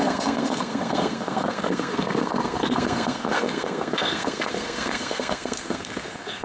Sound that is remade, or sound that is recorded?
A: remade